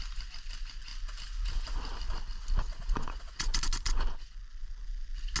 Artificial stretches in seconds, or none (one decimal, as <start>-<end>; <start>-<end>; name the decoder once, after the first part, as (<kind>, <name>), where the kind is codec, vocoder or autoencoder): 2.7-4.3 (vocoder, Vocos)